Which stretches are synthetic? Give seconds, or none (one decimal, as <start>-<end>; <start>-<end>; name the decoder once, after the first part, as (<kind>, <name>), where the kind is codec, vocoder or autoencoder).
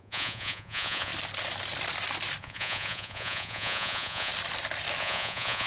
0.0-1.1 (vocoder, Vocos); 2.4-4.3; 5.0-5.7